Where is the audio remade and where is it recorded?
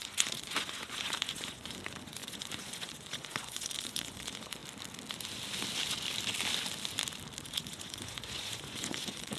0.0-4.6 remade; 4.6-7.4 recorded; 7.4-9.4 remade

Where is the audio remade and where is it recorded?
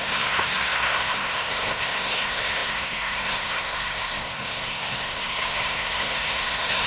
0.0-6.9 remade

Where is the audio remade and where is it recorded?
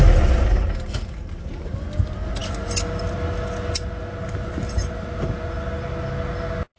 0.0-6.8 recorded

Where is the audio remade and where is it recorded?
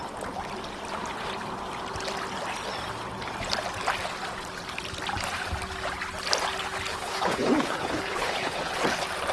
0.0-6.9 recorded; 6.9-8.7 remade; 8.7-9.3 recorded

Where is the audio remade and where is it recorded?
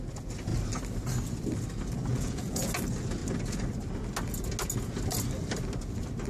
0.0-2.1 recorded; 2.1-2.7 remade; 2.7-6.3 recorded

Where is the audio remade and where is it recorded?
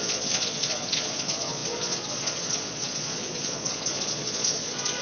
0.0-5.0 remade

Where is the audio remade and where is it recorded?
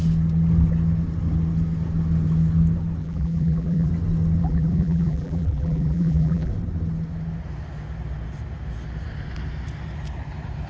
0.0-3.0 recorded; 3.0-3.9 remade; 3.9-4.4 recorded; 4.4-6.5 remade; 6.5-10.7 recorded